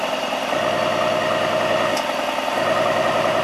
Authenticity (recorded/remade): recorded